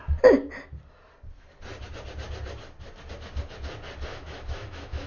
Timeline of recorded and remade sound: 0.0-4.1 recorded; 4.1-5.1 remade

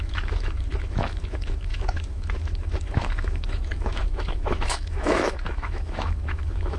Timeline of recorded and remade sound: 0.0-6.8 remade

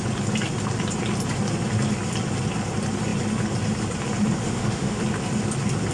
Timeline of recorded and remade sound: 0.0-4.4 recorded; 4.4-5.0 remade; 5.0-5.9 recorded